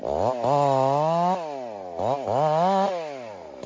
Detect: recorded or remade recorded